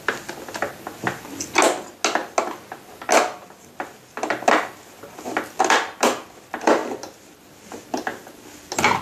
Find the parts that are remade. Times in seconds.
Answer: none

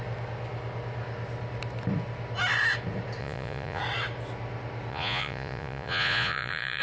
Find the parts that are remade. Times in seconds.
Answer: 3.2-3.8 (vocoder, Vocos); 4.9-6.8

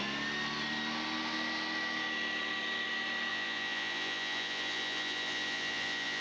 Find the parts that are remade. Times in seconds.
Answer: 3.3-6.2 (vocoder, Vocos)